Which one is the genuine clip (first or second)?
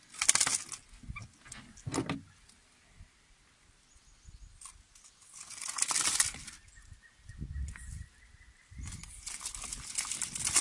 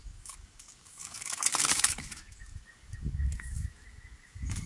first